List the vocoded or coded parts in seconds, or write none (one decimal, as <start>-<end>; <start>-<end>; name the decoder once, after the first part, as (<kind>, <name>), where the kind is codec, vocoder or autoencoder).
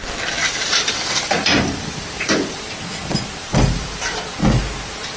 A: 0.4-2.6 (vocoder, BigVGAN v2); 3.5-4.2